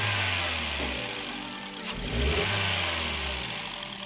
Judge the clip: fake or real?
real